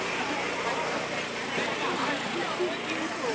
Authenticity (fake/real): real